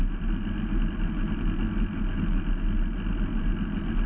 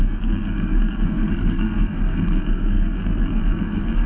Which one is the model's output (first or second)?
second